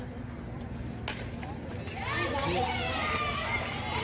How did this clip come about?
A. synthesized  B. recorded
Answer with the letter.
B